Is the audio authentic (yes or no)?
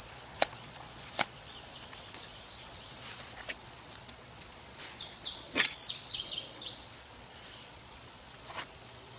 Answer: no